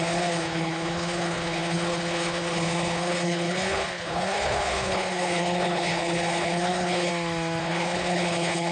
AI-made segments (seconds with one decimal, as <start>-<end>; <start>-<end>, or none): 0.0-7.1; 7.6-8.7